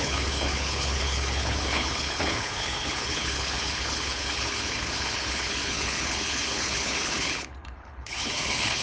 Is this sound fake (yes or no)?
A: yes